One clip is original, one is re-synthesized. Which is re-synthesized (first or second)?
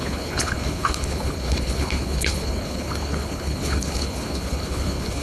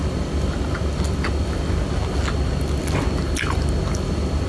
first